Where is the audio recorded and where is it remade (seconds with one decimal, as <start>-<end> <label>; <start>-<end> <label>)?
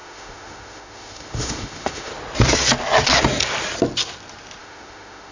0.0-2.1 remade; 2.1-4.6 recorded; 4.6-5.3 remade